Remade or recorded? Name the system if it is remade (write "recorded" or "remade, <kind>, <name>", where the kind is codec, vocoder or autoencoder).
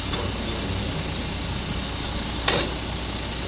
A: recorded